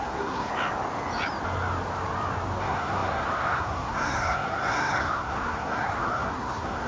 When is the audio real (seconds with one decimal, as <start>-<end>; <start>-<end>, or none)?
0.5-2.6